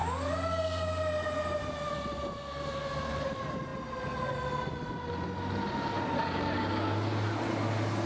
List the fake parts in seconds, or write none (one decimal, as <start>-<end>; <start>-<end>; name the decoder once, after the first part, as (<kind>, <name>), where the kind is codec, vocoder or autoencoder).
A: none

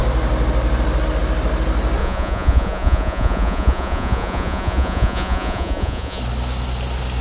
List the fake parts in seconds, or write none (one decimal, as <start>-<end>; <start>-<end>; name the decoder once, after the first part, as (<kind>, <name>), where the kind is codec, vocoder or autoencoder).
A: 2.0-6.2 (vocoder, Vocos)

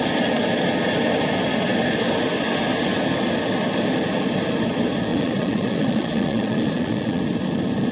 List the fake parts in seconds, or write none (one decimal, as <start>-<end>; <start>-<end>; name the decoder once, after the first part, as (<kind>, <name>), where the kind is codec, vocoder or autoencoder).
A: 5.1-7.2 (vocoder, Vocos)